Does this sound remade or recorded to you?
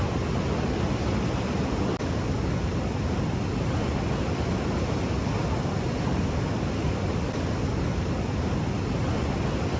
recorded